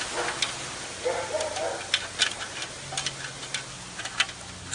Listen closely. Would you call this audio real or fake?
real